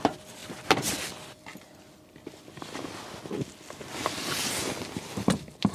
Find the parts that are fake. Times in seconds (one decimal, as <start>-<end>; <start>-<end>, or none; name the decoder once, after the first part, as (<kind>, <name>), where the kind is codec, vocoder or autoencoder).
none